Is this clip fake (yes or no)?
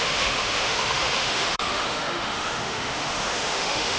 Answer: yes